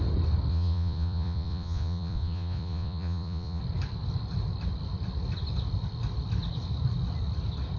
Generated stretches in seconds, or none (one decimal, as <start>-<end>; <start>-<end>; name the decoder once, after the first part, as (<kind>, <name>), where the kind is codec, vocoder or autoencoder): 0.5-3.6 (vocoder, Vocos)